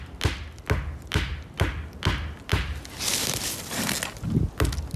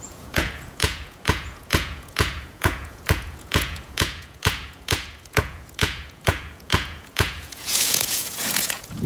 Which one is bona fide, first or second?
first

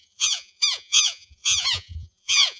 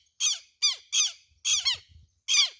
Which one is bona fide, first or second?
second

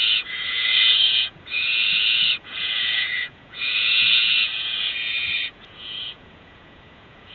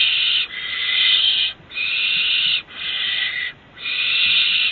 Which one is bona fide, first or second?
second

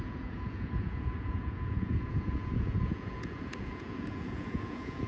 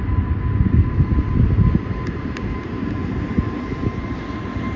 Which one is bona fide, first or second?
second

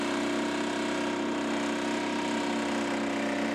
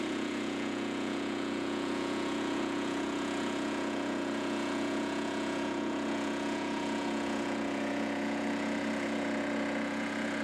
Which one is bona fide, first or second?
first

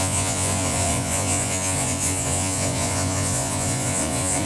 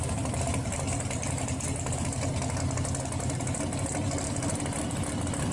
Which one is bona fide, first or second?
second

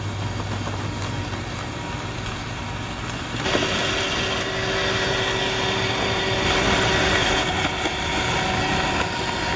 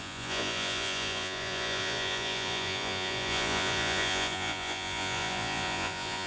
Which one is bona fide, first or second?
first